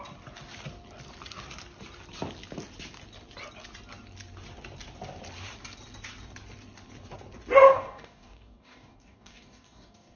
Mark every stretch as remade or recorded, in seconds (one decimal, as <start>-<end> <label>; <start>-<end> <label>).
0.0-7.7 recorded; 7.7-10.2 remade